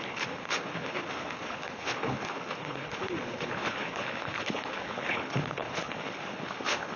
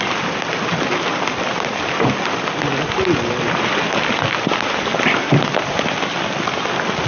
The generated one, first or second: first